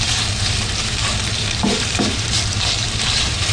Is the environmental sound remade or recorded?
remade